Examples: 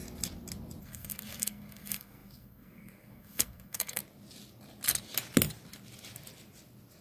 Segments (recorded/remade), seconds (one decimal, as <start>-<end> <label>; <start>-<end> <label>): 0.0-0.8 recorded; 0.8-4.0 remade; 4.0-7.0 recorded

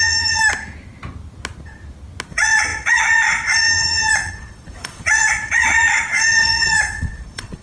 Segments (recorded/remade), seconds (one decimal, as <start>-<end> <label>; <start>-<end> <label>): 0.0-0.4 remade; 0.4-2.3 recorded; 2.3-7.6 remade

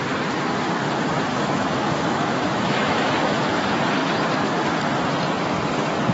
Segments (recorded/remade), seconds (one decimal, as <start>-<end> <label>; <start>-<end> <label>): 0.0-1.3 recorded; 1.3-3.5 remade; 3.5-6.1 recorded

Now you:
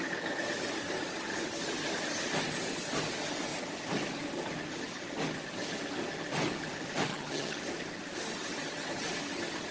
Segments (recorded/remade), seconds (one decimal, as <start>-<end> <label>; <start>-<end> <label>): 0.0-7.1 recorded; 7.1-7.6 remade; 7.6-9.7 recorded

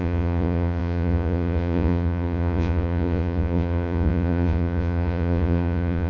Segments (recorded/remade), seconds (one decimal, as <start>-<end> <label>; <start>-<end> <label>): 0.0-6.1 remade